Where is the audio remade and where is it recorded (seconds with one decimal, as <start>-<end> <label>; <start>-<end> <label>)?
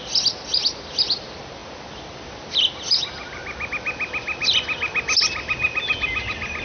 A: 0.0-6.6 recorded